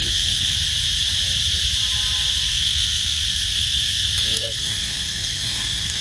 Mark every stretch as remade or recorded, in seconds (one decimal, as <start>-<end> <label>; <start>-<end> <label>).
0.0-0.6 remade; 0.6-2.5 recorded; 2.5-6.0 remade